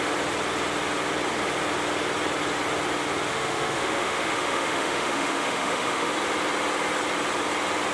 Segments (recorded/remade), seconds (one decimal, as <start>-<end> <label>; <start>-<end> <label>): 0.0-3.3 recorded; 3.3-6.1 remade; 6.1-7.9 recorded